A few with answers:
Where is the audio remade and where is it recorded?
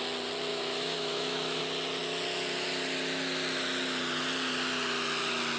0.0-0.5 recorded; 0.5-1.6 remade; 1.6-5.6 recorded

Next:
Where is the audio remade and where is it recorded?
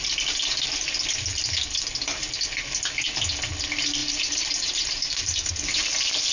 0.0-4.0 recorded; 4.0-5.5 remade; 5.5-6.3 recorded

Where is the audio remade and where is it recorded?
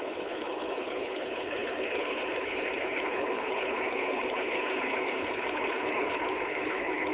0.0-7.1 remade